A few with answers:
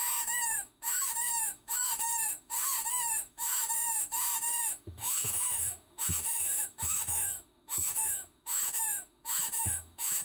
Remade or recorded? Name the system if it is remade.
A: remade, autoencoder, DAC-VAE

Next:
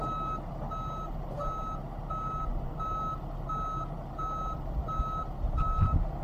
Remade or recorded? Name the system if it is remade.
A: recorded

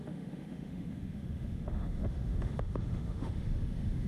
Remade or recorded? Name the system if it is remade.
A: remade, autoencoder, DAC-VAE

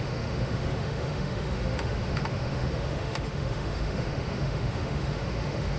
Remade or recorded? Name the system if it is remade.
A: remade, autoencoder, DAC-VAE